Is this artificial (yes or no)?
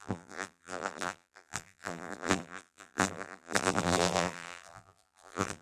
yes